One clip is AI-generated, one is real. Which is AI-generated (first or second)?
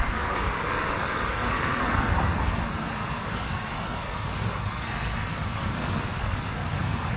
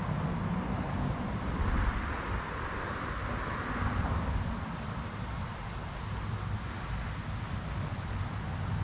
first